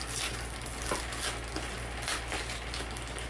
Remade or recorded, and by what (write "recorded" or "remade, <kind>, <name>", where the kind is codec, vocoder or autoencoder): recorded